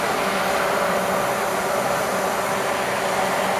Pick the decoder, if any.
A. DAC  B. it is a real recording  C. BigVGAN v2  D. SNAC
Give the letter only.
B